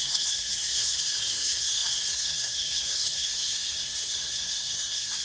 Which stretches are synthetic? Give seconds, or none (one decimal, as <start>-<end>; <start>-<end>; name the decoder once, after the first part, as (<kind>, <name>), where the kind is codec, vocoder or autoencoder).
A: 0.0-5.2 (codec, SNAC)

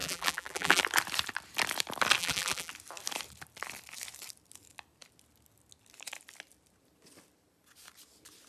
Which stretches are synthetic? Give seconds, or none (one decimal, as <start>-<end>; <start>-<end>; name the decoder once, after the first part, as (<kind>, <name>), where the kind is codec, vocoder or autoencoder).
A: 0.0-0.8 (vocoder, BigVGAN v2); 2.2-2.7